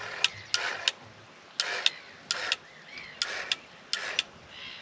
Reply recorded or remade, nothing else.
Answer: recorded